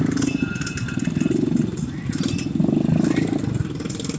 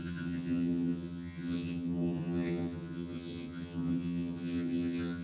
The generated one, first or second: second